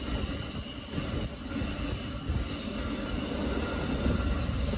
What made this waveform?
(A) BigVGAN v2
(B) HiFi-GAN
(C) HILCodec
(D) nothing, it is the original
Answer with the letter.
D